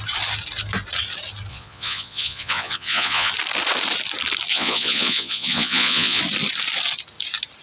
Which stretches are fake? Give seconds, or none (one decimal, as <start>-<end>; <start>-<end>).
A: 1.5-3.3; 4.5-6.2